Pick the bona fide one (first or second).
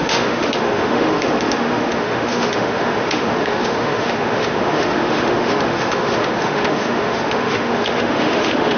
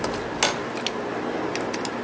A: second